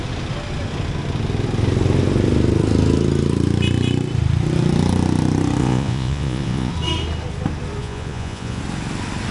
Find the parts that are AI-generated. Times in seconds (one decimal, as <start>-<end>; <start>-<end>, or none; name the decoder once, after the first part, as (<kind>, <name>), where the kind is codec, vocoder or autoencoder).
5.6-6.7 (vocoder, Vocos); 7.8-8.6